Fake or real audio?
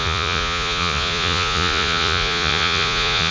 fake